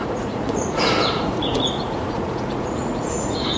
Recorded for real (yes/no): no